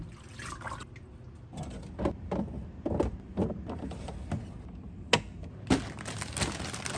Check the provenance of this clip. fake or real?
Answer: real